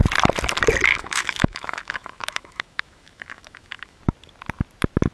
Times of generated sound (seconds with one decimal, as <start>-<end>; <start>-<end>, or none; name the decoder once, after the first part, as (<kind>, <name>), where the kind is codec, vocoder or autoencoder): 0.9-4.0 (autoencoder, DAC-VAE)